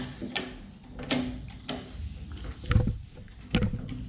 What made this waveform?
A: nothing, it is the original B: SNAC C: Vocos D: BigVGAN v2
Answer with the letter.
A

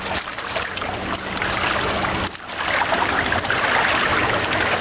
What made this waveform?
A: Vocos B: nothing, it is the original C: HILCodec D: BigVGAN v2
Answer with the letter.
D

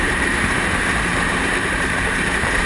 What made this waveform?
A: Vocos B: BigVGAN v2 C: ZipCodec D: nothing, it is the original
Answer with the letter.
B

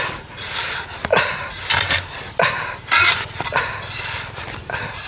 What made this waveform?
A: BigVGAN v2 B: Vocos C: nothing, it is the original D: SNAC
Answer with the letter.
C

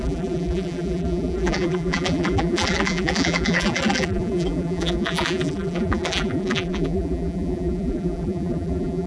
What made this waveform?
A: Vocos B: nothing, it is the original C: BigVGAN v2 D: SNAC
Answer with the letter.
C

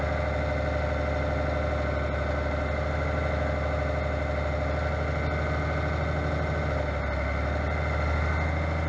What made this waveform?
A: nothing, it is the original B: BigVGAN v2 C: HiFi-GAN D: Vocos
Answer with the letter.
A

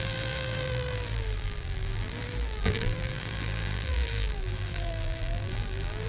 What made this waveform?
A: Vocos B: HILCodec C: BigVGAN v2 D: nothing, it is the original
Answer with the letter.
C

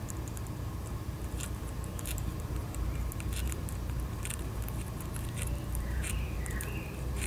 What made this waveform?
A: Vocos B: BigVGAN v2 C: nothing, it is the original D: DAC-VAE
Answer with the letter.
B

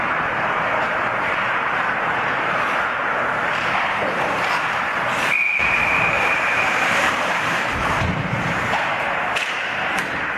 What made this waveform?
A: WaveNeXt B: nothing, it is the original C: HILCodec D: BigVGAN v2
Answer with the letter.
D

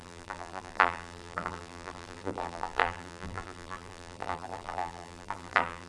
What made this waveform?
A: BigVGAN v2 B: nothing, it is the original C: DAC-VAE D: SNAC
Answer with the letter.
A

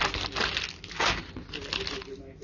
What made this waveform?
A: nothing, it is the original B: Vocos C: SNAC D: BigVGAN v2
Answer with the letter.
A